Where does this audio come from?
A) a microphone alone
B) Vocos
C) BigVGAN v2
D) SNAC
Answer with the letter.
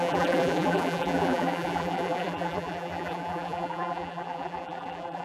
C